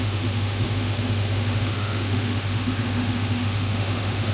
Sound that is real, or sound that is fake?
fake